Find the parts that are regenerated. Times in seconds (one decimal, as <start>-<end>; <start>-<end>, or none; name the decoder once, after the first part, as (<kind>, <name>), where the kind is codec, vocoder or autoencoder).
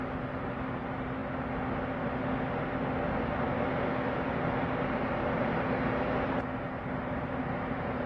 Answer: 0.0-1.2 (vocoder, BigVGAN v2); 6.1-8.1